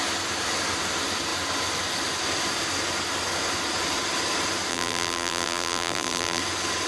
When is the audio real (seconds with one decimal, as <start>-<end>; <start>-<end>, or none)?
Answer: 0.0-4.7; 6.4-6.9